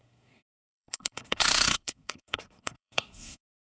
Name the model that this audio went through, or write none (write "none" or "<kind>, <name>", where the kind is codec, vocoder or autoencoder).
codec, SNAC